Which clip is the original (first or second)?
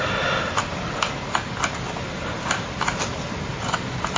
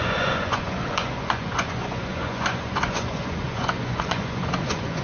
first